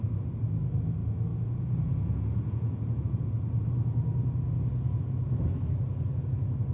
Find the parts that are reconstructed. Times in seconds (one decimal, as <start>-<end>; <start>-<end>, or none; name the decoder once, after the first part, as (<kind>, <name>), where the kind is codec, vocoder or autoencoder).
1.3-3.3 (vocoder, Vocos)